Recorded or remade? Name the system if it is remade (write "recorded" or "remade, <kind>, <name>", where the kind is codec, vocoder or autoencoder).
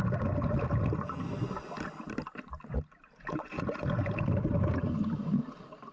recorded